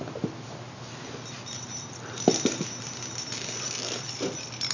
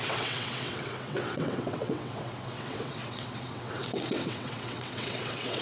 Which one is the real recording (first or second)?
first